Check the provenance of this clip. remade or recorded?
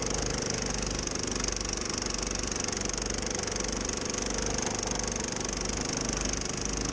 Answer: recorded